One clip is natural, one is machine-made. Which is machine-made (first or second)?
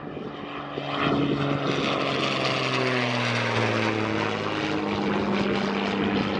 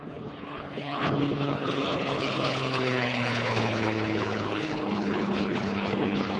second